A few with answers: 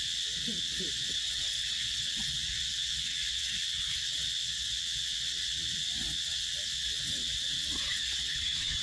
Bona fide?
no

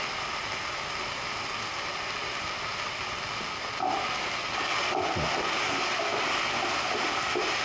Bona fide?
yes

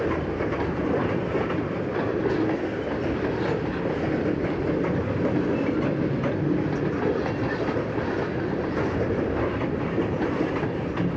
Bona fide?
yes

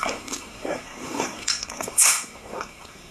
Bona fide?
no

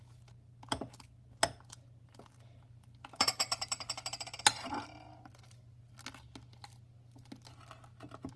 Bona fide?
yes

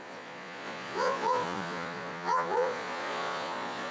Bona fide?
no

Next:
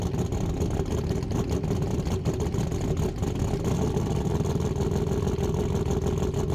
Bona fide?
yes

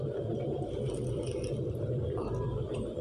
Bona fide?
yes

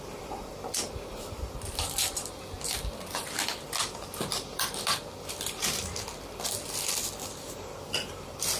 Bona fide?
no